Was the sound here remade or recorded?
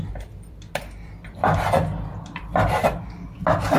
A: remade